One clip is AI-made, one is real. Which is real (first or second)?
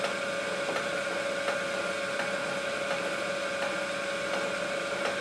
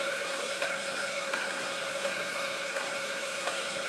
first